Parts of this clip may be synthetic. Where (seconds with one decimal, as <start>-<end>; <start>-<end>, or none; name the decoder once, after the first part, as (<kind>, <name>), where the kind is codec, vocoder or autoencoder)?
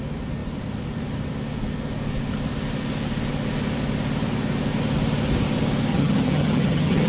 5.9-7.1 (vocoder, HiFi-GAN)